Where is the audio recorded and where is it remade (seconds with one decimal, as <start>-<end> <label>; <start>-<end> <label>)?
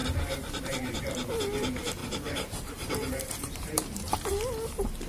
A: 0.0-0.6 remade; 0.6-2.0 recorded; 2.0-4.3 remade; 4.3-5.1 recorded